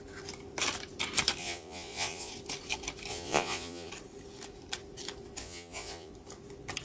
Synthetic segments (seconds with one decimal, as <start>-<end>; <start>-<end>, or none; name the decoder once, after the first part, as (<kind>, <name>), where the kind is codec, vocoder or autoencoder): 1.4-2.3 (vocoder, Vocos); 3.1-3.9; 5.4-6.1